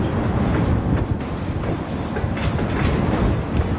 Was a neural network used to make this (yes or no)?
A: no